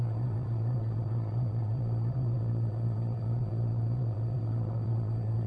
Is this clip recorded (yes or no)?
no